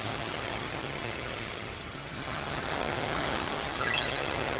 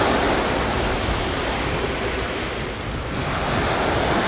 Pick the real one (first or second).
second